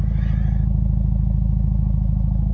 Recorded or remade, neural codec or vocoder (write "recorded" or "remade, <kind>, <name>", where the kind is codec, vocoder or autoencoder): recorded